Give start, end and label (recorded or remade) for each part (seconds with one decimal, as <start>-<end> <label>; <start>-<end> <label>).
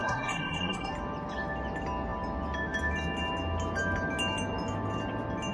0.0-0.9 remade; 0.9-5.5 recorded